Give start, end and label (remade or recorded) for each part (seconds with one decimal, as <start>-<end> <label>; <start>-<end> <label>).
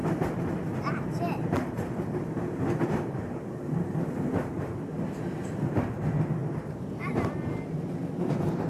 0.0-6.4 remade; 6.4-6.9 recorded; 6.9-8.7 remade